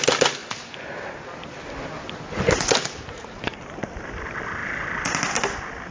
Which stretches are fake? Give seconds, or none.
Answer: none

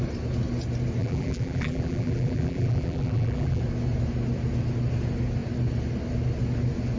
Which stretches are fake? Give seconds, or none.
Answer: 1.0-3.6 (vocoder, BigVGAN v2)

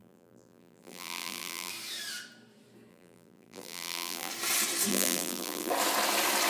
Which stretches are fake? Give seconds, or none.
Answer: 0.0-1.7 (vocoder, BigVGAN v2); 2.9-4.3; 4.9-5.7

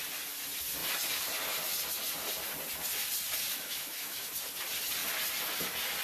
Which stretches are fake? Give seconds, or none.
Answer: 3.7-4.3 (autoencoder, DAC-VAE)

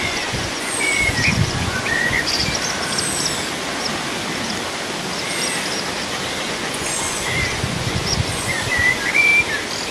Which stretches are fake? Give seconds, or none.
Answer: 0.0-2.4 (vocoder, Vocos); 6.4-9.3

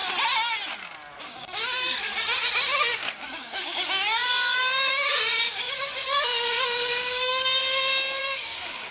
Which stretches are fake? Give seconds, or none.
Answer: 1.2-2.1 (codec, DAC); 2.8-7.6; 8.2-8.9

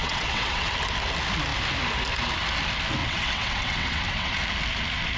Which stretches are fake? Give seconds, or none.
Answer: 0.0-0.7 (vocoder, WaveNeXt); 3.0-4.3